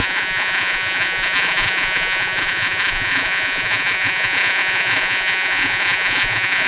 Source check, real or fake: fake